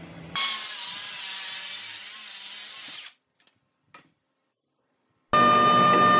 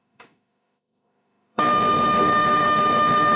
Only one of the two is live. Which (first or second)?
first